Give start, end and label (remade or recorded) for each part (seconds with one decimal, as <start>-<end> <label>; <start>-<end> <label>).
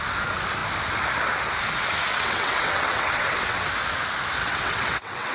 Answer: 0.0-2.1 recorded; 2.1-3.7 remade; 3.7-4.4 recorded; 4.4-5.3 remade